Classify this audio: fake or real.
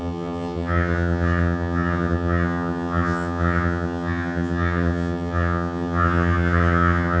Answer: fake